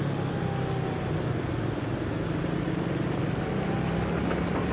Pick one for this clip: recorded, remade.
recorded